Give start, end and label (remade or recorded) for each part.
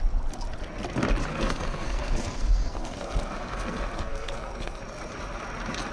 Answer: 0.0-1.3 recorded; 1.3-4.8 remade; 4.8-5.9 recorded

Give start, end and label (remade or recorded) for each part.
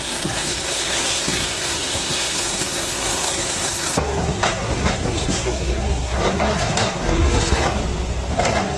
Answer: 0.0-7.8 remade; 7.8-8.3 recorded; 8.3-8.8 remade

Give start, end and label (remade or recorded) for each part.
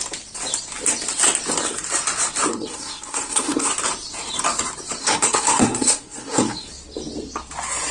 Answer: 0.0-2.5 recorded; 2.5-3.7 remade; 3.7-5.0 recorded; 5.0-6.7 remade; 6.7-7.9 recorded